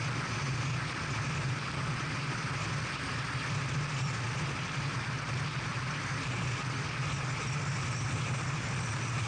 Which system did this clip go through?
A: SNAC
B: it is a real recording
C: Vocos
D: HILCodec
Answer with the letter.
B